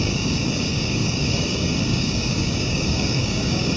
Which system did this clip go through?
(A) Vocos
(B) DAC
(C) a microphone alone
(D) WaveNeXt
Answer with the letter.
B